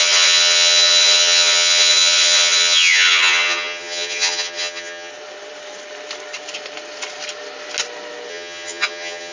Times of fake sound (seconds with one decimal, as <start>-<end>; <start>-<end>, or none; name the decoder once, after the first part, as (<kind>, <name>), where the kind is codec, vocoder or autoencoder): 0.0-5.1 (vocoder, HiFi-GAN); 8.3-9.3